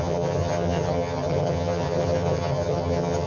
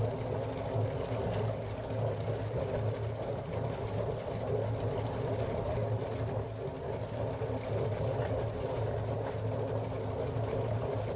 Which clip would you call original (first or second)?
second